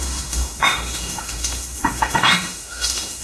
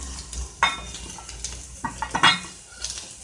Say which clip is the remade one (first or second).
first